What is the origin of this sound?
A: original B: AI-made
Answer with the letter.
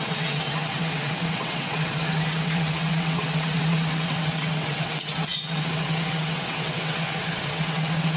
B